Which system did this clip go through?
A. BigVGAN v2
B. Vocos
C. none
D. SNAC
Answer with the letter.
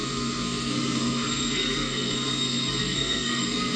D